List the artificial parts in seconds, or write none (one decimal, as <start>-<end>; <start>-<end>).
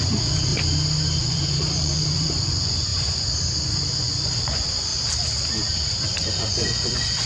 0.0-0.5; 1.2-4.9; 6.2-7.3